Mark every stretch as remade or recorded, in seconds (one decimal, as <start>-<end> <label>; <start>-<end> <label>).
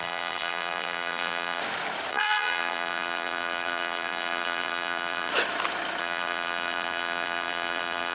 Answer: 0.0-1.6 remade; 1.6-2.1 recorded; 2.1-5.3 remade; 5.3-6.0 recorded; 6.0-8.1 remade